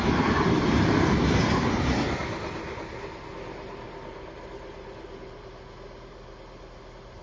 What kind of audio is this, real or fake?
real